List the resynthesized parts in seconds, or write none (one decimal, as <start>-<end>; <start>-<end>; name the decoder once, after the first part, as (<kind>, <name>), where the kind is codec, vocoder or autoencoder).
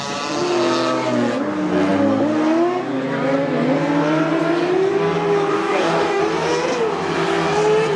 5.5-6.2 (codec, DAC)